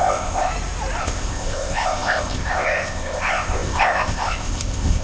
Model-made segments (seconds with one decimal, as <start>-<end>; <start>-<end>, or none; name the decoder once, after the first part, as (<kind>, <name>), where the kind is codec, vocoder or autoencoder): 0.0-0.5 (codec, ZipCodec); 1.0-5.0